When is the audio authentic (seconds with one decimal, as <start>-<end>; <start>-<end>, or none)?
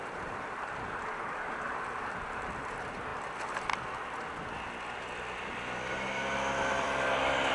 3.1-6.7